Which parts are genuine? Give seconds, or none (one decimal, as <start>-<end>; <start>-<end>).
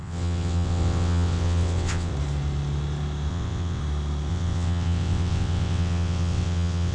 2.1-3.3; 3.8-4.3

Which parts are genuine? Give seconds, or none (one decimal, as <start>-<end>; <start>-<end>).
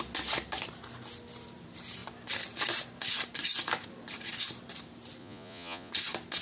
0.0-5.2; 5.9-6.4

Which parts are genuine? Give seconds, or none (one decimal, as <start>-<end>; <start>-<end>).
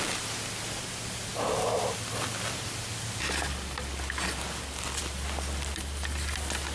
0.0-6.7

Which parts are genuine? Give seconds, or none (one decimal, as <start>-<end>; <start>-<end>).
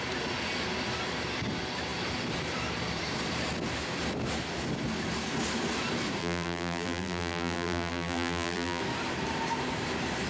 0.0-6.2; 8.8-10.3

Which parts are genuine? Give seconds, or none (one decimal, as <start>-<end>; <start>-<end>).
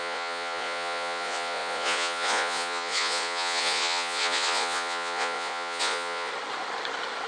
6.3-7.3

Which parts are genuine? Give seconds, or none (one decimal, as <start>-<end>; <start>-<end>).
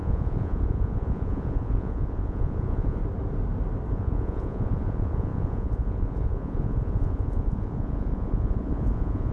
3.0-3.9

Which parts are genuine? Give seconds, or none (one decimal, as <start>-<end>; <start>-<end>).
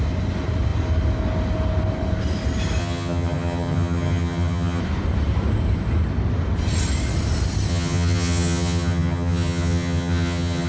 0.0-2.8; 4.8-7.7